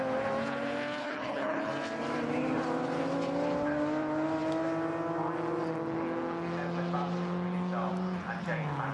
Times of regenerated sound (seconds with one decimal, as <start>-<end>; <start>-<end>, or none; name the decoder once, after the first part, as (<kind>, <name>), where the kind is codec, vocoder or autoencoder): 1.0-1.7 (codec, HILCodec)